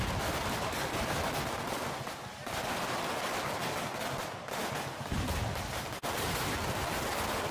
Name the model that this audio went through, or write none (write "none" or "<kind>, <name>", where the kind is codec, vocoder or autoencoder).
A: none